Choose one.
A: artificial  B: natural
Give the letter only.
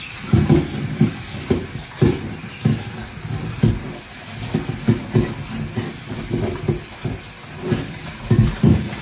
B